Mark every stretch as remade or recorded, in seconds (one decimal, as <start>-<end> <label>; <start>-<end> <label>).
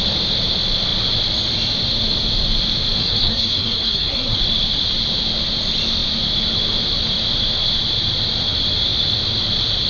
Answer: 0.0-3.0 recorded; 3.0-4.4 remade; 4.4-9.9 recorded